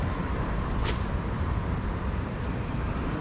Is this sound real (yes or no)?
no